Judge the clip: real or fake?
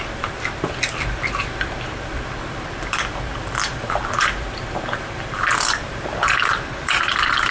fake